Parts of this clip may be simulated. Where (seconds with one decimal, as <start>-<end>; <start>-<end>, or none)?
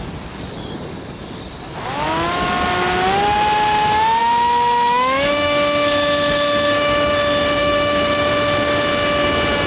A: 4.2-7.1; 7.6-8.3